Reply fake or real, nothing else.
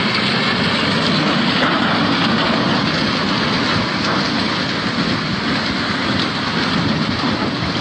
real